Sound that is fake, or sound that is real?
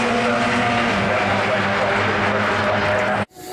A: real